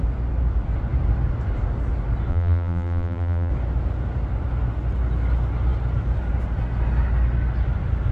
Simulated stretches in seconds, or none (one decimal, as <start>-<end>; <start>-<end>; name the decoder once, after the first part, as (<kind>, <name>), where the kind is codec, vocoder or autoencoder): 2.3-3.5 (vocoder, BigVGAN v2)